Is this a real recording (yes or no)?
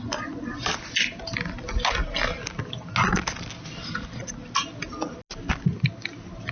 yes